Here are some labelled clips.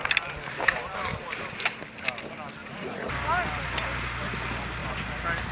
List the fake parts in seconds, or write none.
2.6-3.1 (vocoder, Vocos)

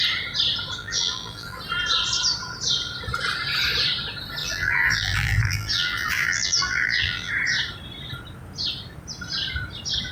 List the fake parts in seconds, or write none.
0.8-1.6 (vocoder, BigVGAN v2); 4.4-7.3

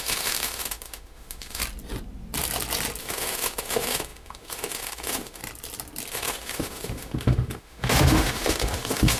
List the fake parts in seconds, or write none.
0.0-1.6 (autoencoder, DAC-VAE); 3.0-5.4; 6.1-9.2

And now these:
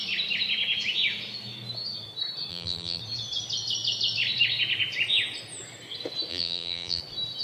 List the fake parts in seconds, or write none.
2.5-3.0 (vocoder, BigVGAN v2); 6.3-7.0

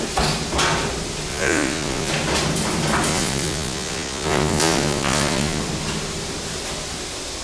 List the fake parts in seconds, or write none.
1.3-2.1 (vocoder, Vocos); 3.1-5.6

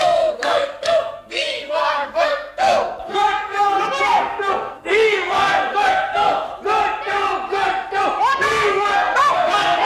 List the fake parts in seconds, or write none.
0.0-6.5 (codec, SNAC); 8.3-9.9

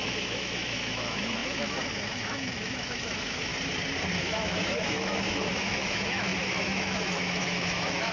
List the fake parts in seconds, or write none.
0.0-3.5 (autoencoder, DAC-VAE); 4.2-8.1

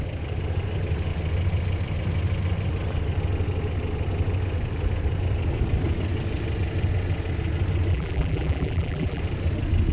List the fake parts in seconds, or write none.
7.9-9.2 (vocoder, BigVGAN v2)